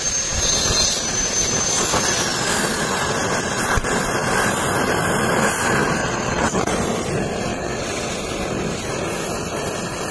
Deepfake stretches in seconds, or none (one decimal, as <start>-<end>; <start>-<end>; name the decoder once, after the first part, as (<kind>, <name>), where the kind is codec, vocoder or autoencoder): 6.0-6.7 (vocoder, WaveNeXt); 7.5-8.1